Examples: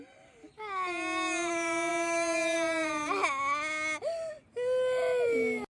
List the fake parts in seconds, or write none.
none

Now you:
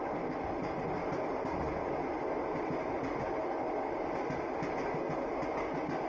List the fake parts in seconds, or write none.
none

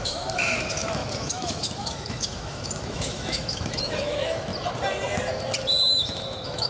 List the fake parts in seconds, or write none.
0.0-4.5 (autoencoder, DAC-VAE); 5.9-6.7

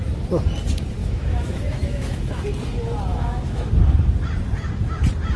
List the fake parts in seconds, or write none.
1.0-2.4 (autoencoder, DAC-VAE); 3.1-3.7

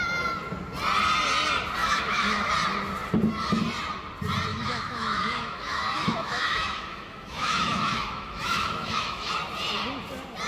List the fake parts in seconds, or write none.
1.8-2.5 (autoencoder, DAC-VAE); 4.5-9.3

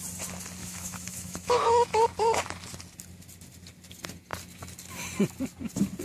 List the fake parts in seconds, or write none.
0.6-2.0 (autoencoder, DAC-VAE)

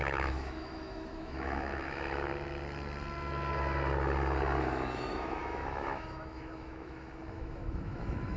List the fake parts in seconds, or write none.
0.0-2.3 (autoencoder, DAC-VAE); 4.6-8.4